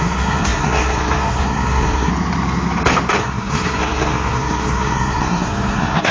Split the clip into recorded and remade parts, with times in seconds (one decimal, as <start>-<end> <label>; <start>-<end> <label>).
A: 0.0-2.1 remade; 2.1-3.2 recorded; 3.2-6.1 remade